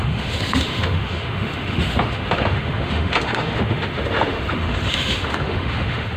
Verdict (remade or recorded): remade